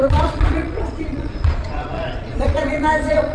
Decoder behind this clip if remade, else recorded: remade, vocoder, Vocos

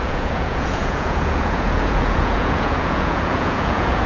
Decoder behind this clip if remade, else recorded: remade, vocoder, Vocos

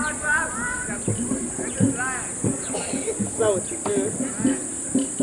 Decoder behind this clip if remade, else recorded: recorded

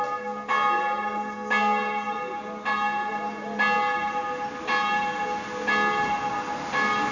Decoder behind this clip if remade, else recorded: recorded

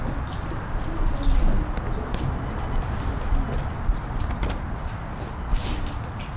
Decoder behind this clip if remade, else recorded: recorded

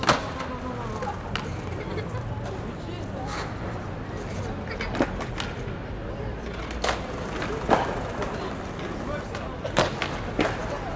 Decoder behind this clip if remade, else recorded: recorded